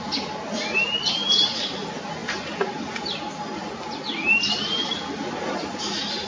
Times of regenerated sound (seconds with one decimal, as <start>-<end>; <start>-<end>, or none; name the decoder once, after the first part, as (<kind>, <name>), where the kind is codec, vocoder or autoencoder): none